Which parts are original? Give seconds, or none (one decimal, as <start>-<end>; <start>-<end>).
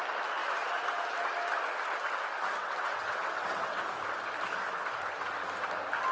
0.0-2.6; 3.9-6.1